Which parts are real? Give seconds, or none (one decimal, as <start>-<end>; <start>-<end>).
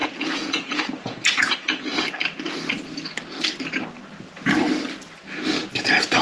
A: 1.8-6.2